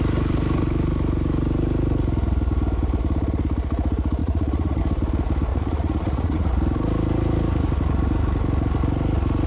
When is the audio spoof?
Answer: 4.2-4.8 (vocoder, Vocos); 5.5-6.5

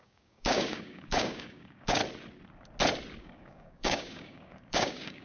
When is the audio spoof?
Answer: 0.0-2.0 (codec, DAC); 3.2-5.2

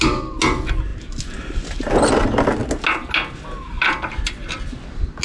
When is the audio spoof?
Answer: none

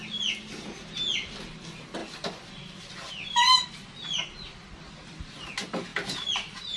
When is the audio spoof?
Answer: none

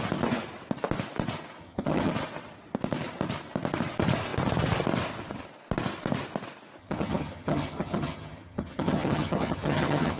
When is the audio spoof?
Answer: 1.6-2.1 (vocoder, HiFi-GAN); 6.8-10.2

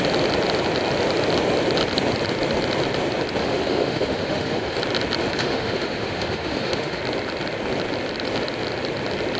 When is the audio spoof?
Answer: 3.4-4.8 (autoencoder, DAC-VAE); 5.2-7.0

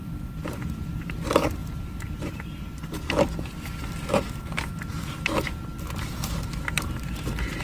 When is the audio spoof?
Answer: 0.0-1.6 (vocoder, BigVGAN v2); 5.8-7.6